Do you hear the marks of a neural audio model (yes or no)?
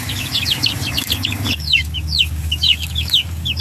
yes